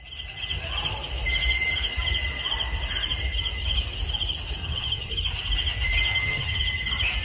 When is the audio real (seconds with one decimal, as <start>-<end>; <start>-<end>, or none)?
0.0-4.6; 5.1-6.1; 6.6-7.2